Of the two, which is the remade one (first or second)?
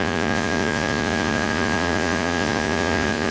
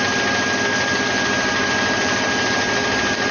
first